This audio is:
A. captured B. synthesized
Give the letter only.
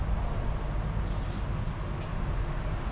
A